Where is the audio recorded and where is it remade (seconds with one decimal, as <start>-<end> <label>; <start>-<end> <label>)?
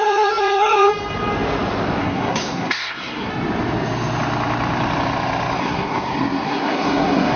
0.0-0.9 remade; 0.9-2.0 recorded; 2.0-3.3 remade; 3.3-5.6 recorded; 5.6-7.4 remade